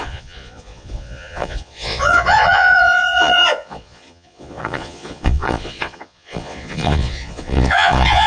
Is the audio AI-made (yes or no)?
yes